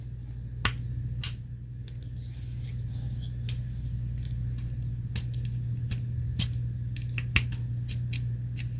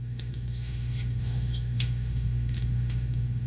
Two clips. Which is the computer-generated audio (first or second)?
second